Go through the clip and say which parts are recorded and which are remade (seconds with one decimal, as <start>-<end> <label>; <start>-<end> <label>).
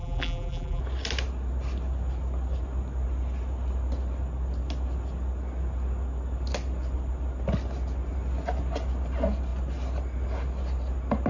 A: 0.0-0.8 remade; 0.8-11.3 recorded